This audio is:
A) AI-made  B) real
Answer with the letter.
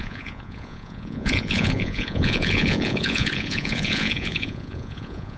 A